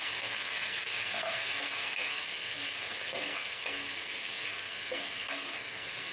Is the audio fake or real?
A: fake